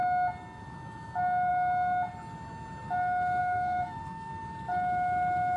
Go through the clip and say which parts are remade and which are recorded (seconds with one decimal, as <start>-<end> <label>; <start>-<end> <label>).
0.0-3.4 recorded; 3.4-4.3 remade; 4.3-5.6 recorded